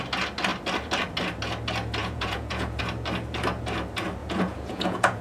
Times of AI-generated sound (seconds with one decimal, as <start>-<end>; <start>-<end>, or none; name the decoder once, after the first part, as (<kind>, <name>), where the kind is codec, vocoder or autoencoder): 2.0-2.8 (vocoder, Vocos); 4.2-5.2